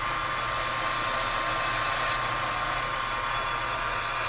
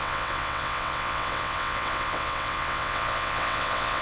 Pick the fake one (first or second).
second